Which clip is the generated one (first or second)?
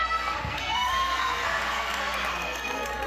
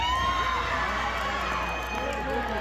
first